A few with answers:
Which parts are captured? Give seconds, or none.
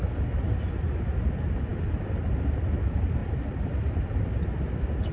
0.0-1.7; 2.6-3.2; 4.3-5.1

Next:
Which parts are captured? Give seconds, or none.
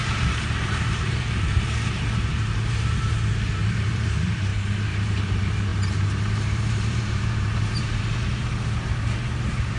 none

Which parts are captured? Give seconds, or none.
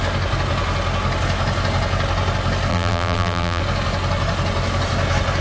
0.0-2.7; 3.6-5.4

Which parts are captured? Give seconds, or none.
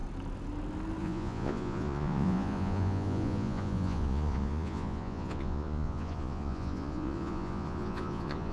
0.0-1.0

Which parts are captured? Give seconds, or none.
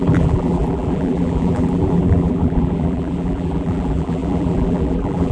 none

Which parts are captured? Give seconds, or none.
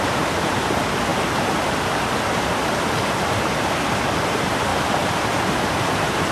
4.7-5.4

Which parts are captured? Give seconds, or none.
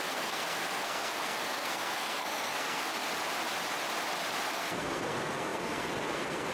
2.9-4.5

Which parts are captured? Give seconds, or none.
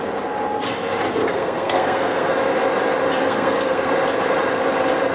0.0-1.2; 2.3-3.2; 3.9-5.1